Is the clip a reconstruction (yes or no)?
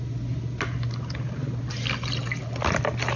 no